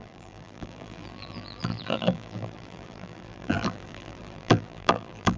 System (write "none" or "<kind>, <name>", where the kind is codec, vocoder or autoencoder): vocoder, BigVGAN v2